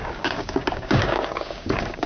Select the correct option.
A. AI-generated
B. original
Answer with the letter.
A